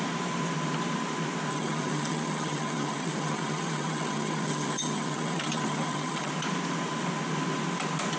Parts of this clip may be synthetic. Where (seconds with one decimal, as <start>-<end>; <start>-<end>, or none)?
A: 1.5-6.3